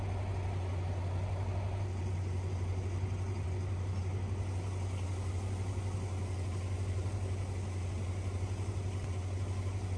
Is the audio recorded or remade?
recorded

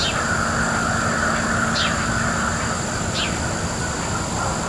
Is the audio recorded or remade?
recorded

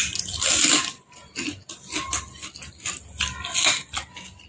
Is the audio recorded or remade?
recorded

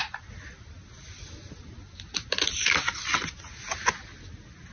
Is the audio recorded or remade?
recorded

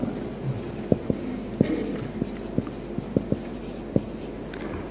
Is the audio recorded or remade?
recorded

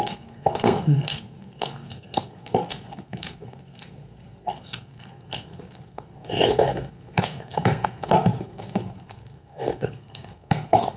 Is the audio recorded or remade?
remade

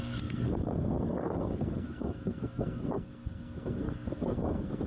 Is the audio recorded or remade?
remade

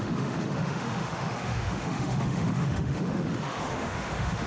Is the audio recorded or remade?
remade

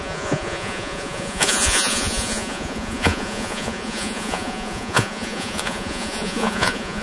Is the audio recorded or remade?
remade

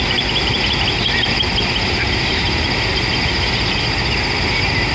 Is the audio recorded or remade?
recorded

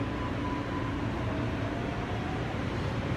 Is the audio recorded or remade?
remade